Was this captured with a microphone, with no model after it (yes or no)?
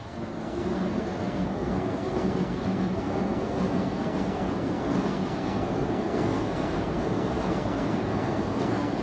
no